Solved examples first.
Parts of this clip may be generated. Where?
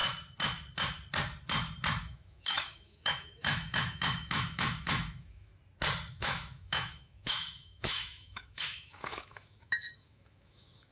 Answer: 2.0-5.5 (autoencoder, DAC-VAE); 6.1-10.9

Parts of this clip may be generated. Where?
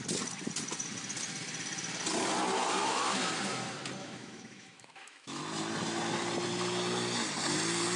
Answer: 2.8-3.3 (autoencoder, DAC-VAE); 4.0-5.4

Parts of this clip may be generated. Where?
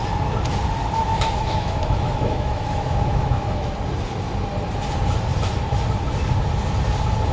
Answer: 1.0-3.7 (autoencoder, DAC-VAE)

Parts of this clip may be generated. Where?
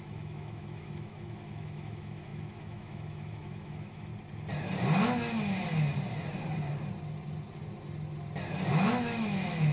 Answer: 0.0-4.1 (autoencoder, DAC-VAE); 8.7-9.7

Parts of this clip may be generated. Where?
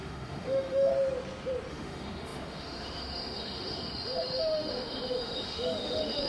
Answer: 0.0-0.9 (autoencoder, DAC-VAE); 1.7-6.3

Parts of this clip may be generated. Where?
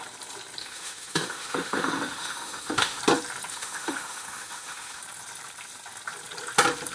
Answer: 0.6-3.0 (autoencoder, DAC-VAE); 3.5-5.0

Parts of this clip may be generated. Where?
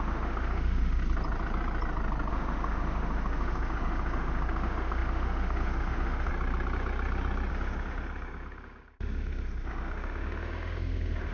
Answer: 0.0-1.0 (autoencoder, DAC-VAE); 2.3-6.3; 7.5-11.3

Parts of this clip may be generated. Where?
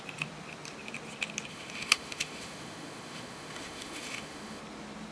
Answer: 1.5-4.6 (autoencoder, DAC-VAE)